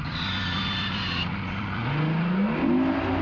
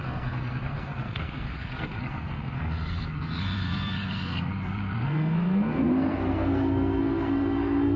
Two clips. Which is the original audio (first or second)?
first